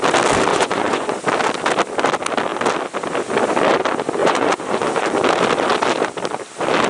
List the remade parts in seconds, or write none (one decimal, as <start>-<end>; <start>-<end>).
0.5-1.2; 4.2-5.1